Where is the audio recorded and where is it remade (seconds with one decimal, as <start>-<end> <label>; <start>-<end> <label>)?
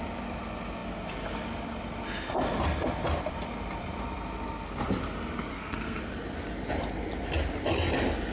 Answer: 0.0-5.5 recorded; 5.5-6.0 remade; 6.0-8.3 recorded